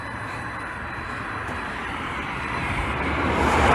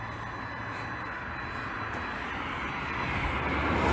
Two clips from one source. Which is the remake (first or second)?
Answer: first